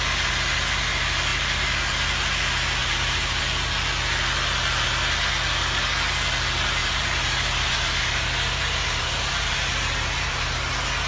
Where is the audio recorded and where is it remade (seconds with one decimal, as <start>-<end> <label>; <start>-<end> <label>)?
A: 0.0-2.8 recorded; 2.8-3.4 remade; 3.4-6.8 recorded; 6.8-10.7 remade; 10.7-11.1 recorded